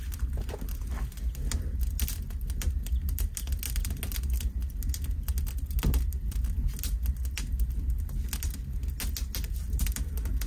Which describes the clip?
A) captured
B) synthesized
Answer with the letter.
A